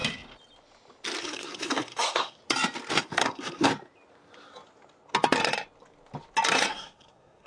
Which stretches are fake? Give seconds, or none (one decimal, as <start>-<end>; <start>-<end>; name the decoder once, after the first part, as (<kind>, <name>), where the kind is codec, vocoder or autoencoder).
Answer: 1.2-2.4 (codec, SNAC); 3.0-3.7; 6.7-7.5